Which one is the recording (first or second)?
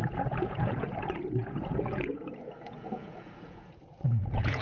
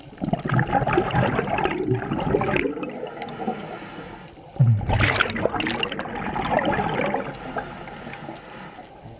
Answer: second